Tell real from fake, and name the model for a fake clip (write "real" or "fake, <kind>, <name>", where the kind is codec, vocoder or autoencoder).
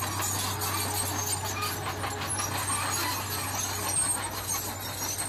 real